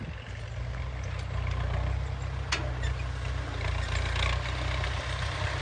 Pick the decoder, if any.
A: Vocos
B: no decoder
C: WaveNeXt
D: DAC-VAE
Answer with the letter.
B